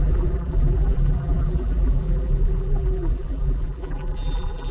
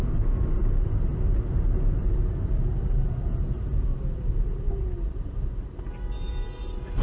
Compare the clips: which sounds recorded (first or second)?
second